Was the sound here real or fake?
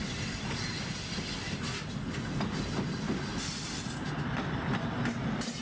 real